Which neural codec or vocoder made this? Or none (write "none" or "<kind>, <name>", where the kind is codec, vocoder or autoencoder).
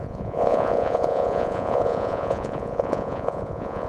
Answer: vocoder, Vocos